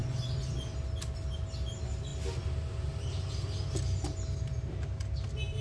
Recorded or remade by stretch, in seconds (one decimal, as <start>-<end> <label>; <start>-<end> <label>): 0.0-5.6 recorded